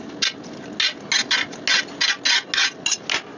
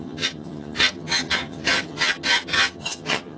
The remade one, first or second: second